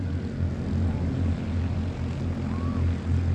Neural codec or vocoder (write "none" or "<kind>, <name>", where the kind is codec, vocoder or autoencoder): none